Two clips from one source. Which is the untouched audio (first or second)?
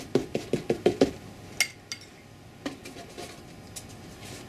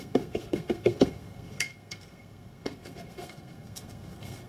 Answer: first